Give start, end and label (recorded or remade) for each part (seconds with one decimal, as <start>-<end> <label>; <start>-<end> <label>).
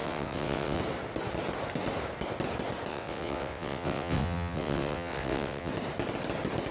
0.0-0.8 remade; 0.8-2.9 recorded; 2.9-5.7 remade; 5.7-6.7 recorded